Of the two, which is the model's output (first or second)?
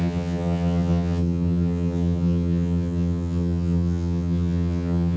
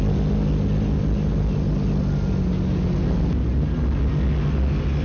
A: first